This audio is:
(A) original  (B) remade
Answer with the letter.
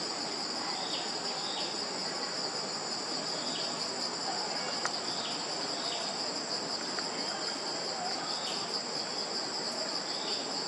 A